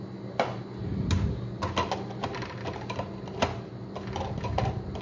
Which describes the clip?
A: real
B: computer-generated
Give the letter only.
A